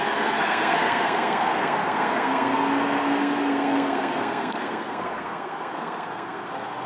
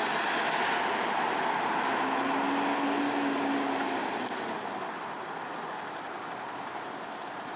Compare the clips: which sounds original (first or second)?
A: second